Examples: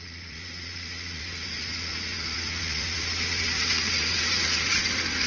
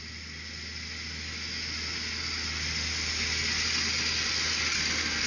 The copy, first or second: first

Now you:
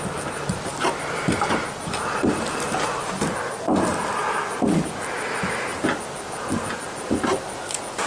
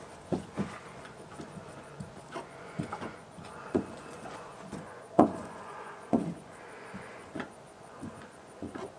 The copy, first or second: second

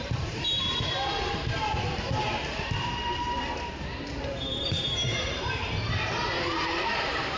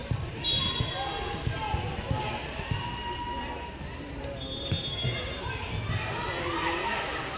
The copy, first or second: first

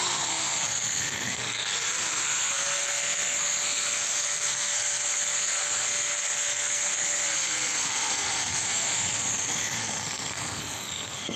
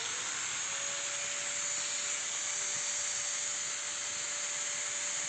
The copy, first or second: first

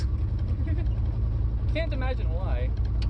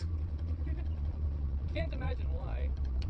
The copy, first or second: second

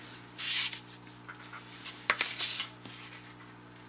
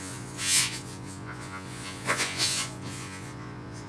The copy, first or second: second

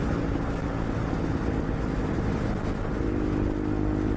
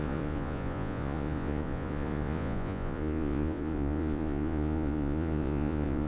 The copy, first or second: second